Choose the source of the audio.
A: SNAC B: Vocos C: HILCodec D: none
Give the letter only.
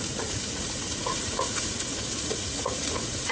B